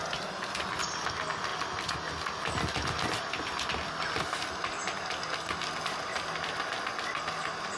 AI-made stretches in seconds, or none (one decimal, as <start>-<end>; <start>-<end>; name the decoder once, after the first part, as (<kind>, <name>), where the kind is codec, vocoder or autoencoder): 0.8-1.5 (vocoder, BigVGAN v2); 4.2-4.8; 5.8-7.8